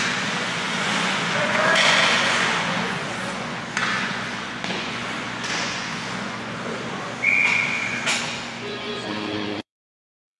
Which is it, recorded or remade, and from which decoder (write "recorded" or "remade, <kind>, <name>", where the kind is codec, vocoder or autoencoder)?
remade, vocoder, Vocos